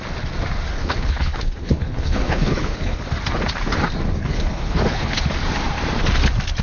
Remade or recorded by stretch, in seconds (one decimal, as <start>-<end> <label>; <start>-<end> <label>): 0.0-0.7 recorded; 0.7-3.0 remade; 3.0-4.2 recorded; 4.2-5.2 remade; 5.2-6.6 recorded